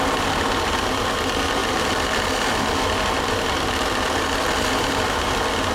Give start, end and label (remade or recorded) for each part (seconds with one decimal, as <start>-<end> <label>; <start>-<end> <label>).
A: 0.0-5.7 recorded